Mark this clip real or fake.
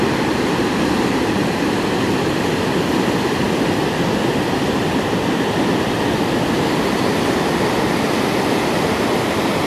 real